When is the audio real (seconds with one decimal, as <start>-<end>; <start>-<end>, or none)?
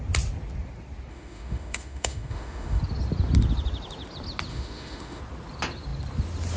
0.0-1.1; 2.8-4.5; 5.2-6.6